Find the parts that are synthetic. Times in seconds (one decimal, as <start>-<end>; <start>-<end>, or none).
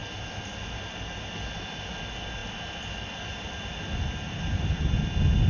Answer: none